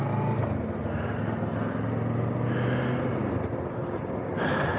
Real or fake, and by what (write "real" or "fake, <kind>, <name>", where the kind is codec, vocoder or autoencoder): real